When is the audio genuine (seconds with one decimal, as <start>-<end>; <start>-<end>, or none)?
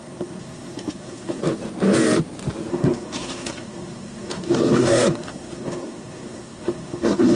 1.4-2.7